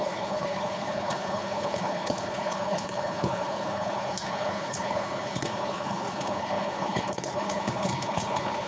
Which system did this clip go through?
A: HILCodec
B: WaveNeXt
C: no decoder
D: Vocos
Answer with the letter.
A